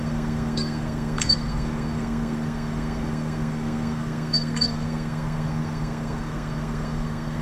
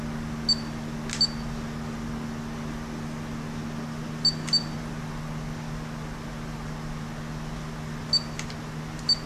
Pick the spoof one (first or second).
first